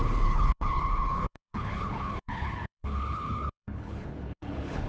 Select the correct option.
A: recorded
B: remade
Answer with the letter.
B